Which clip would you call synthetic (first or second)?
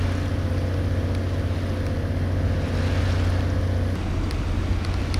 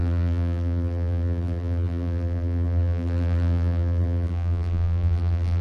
second